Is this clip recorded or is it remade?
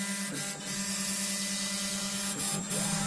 recorded